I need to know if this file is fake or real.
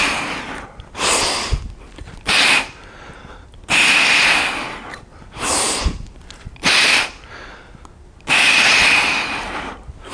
real